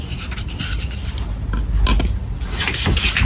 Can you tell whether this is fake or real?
real